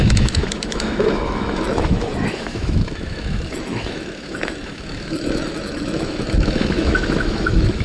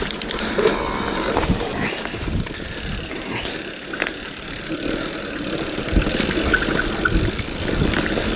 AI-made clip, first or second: first